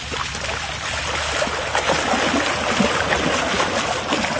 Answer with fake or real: real